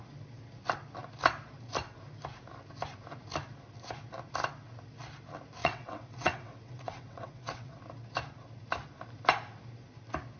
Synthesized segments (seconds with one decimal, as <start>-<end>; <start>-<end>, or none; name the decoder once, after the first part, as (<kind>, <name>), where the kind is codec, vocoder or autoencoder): 5.6-7.8 (vocoder, WaveNeXt)